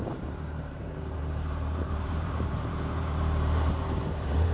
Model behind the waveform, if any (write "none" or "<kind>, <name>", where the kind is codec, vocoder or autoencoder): vocoder, BigVGAN v2